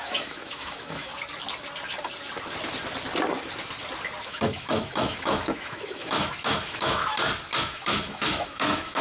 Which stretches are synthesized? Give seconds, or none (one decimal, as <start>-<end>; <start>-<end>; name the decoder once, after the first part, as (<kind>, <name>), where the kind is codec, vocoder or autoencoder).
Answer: 0.0-1.1 (autoencoder, DAC-VAE); 4.3-7.0; 7.6-9.0